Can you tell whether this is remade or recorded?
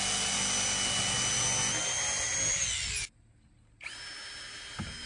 recorded